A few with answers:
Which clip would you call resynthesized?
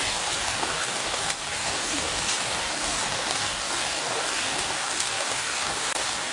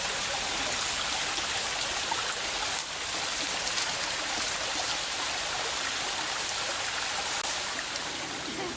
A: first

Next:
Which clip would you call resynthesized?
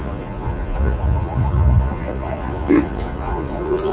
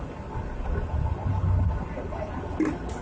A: first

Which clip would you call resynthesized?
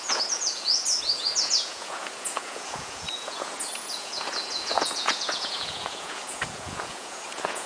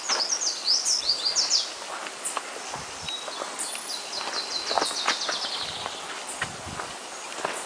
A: first